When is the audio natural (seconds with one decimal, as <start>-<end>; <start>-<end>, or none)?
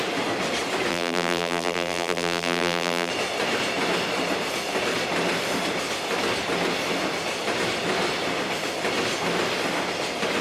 0.0-0.9; 3.1-10.4